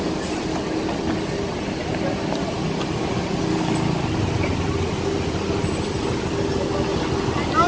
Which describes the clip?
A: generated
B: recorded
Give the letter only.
B